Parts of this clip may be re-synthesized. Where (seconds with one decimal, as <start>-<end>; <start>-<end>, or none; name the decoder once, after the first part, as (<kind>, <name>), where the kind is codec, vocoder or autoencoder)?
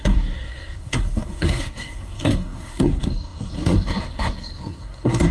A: 0.0-5.3 (codec, SNAC)